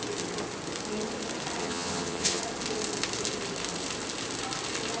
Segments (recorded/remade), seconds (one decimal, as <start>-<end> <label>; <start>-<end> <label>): 0.0-1.6 recorded; 1.6-2.4 remade; 2.4-5.0 recorded